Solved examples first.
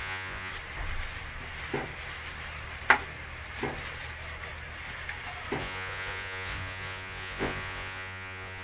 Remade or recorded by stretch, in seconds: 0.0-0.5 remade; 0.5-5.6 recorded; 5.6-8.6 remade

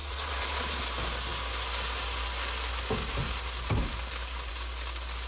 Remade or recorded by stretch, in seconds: 0.0-0.8 remade; 0.8-5.3 recorded

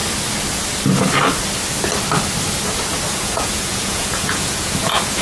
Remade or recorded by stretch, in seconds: 0.0-3.1 recorded; 3.1-5.2 remade